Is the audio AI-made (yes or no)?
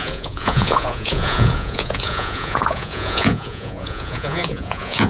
yes